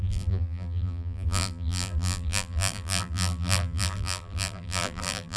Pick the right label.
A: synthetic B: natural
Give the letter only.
A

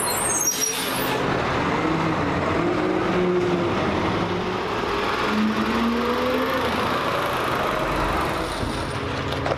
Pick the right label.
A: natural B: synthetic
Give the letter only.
A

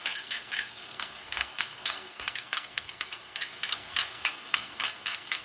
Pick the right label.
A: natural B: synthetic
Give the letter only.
B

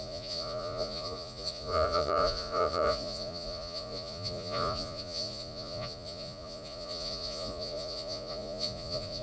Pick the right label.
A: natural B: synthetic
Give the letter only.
B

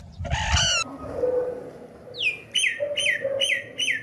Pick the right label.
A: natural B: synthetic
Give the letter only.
A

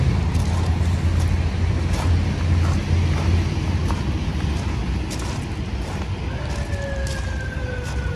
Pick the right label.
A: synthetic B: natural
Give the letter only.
B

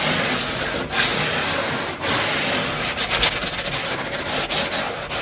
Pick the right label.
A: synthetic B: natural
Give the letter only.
B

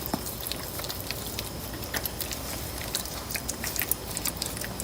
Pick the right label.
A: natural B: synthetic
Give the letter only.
A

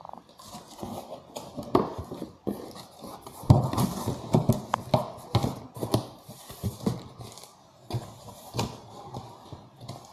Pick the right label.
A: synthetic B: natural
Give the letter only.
B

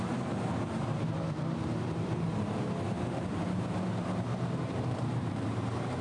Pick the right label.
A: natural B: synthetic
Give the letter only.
B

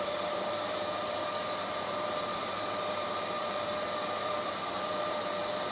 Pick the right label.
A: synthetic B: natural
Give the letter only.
A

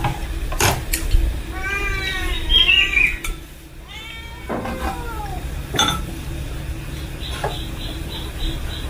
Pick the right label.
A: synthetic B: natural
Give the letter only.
B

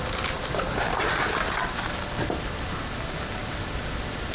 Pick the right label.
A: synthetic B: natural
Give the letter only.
B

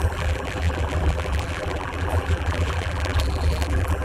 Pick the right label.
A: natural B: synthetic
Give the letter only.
B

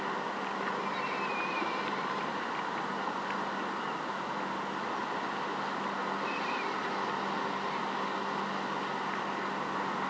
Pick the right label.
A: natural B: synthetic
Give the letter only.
A